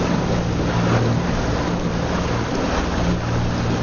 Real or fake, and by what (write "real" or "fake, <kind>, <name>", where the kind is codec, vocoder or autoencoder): real